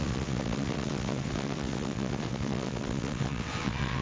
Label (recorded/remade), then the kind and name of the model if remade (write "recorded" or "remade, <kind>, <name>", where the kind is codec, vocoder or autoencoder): remade, vocoder, WaveNeXt